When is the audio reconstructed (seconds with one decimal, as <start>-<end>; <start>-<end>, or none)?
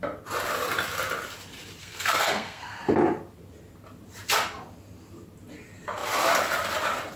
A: 1.8-2.8